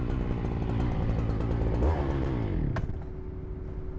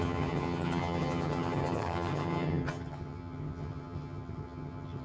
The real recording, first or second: first